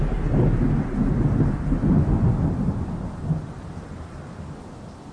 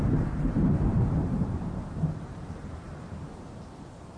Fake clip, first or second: second